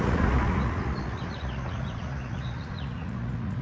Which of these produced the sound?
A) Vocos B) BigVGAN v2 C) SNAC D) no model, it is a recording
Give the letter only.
A